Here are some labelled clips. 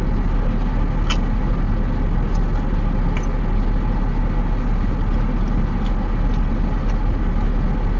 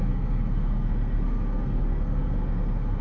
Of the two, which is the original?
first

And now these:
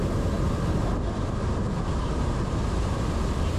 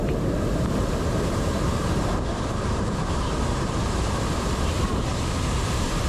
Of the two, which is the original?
first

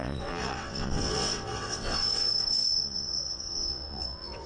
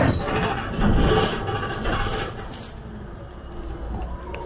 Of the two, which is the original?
second